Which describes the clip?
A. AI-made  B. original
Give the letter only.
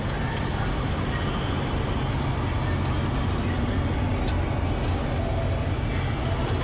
B